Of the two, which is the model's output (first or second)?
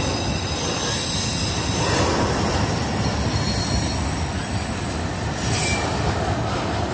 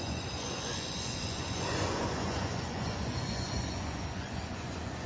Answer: second